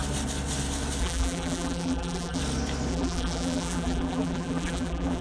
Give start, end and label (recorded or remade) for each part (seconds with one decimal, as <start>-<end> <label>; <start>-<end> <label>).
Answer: 0.0-1.0 recorded; 1.0-2.4 remade; 2.4-2.9 recorded; 2.9-5.2 remade